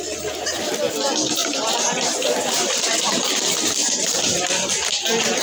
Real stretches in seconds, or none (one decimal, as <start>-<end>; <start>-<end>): 0.0-1.4; 3.2-3.8; 4.4-5.4